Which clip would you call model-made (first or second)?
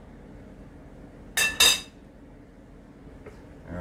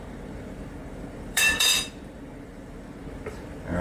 second